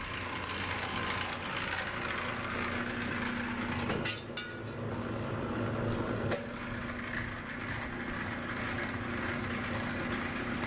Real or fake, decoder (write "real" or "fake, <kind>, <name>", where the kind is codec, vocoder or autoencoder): real